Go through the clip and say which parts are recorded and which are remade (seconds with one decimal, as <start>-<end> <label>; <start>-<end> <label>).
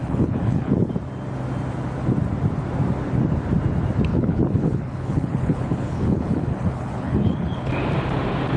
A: 0.0-0.9 remade; 0.9-4.1 recorded; 4.1-7.7 remade; 7.7-8.6 recorded